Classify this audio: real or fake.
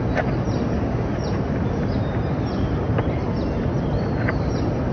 real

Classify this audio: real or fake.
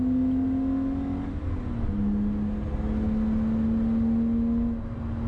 real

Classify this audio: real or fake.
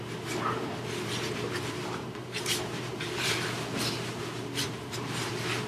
fake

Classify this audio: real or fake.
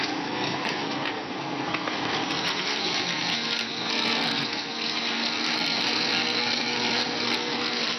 fake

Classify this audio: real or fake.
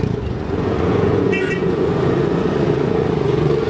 fake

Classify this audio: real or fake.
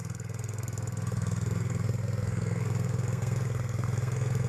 fake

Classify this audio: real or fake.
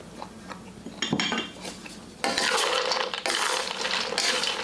real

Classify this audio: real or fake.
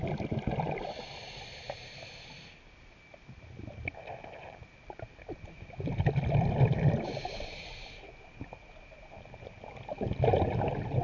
real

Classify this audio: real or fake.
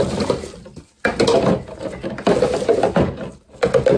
real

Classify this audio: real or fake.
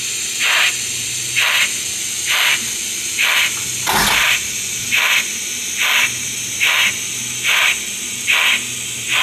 real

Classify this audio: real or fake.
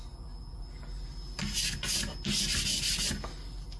real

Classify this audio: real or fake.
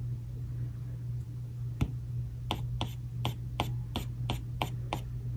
real